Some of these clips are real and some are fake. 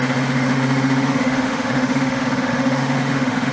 fake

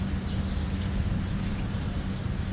real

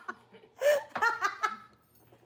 real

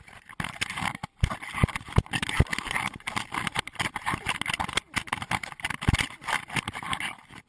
real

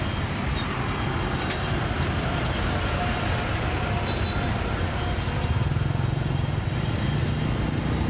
real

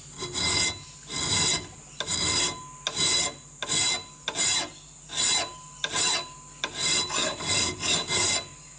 real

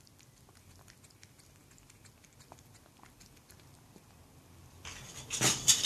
real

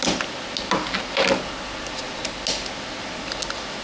real